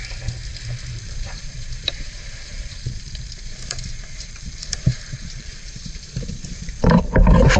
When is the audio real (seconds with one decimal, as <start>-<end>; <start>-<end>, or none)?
0.0-1.0